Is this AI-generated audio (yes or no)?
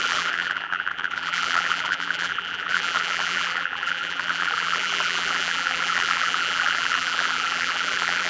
yes